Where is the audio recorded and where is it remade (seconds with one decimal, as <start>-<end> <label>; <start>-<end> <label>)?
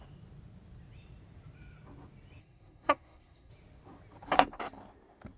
0.0-2.4 recorded; 2.4-3.5 remade; 3.5-5.4 recorded